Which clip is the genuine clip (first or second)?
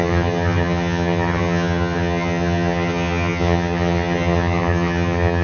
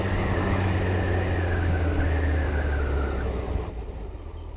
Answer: second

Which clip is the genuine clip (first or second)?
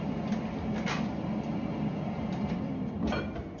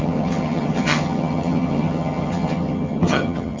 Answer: first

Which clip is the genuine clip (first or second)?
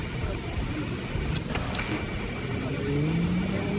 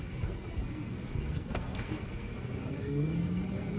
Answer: first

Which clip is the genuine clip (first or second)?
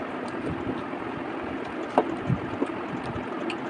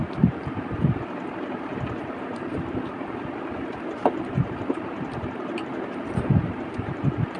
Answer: first